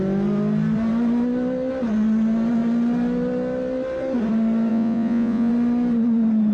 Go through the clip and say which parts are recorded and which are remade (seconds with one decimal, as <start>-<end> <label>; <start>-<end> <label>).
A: 0.0-4.7 recorded; 4.7-5.5 remade; 5.5-6.5 recorded